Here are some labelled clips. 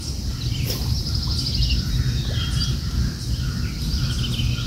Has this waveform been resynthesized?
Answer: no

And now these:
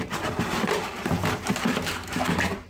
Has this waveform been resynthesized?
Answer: yes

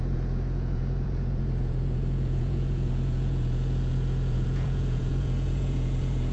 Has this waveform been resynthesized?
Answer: yes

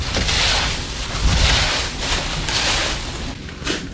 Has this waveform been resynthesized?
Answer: no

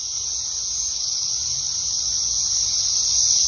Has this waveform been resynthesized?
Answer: no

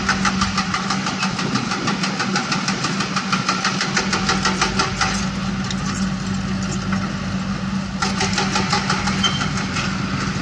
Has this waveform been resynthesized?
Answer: no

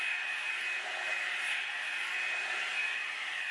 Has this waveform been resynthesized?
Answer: no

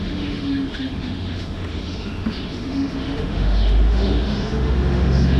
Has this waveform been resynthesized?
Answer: yes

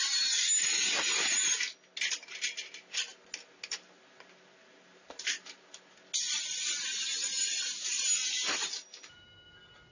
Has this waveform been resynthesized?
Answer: no